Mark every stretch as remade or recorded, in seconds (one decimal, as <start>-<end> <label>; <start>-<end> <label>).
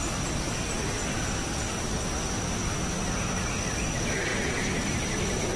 0.0-4.3 recorded; 4.3-5.0 remade; 5.0-5.6 recorded